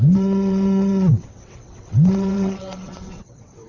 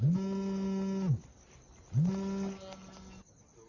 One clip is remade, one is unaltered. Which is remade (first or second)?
first